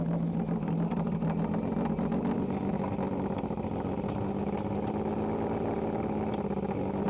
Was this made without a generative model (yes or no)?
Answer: yes